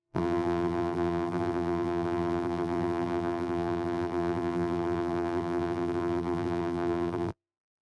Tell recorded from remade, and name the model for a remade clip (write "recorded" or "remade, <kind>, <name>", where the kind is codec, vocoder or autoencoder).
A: remade, vocoder, BigVGAN v2